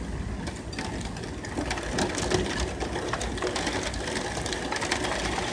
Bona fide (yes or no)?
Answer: yes